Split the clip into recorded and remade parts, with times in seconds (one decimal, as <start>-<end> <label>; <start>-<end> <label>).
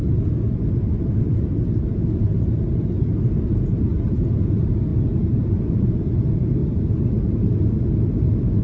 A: 0.0-3.9 recorded; 3.9-4.5 remade; 4.5-8.6 recorded